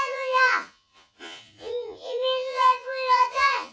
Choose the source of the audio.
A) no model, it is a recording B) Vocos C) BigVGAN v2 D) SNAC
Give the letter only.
B